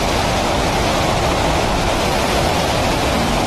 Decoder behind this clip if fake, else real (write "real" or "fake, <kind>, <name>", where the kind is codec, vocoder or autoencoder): real